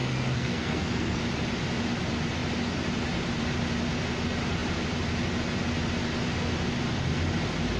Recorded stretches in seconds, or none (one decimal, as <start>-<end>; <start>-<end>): 1.2-7.8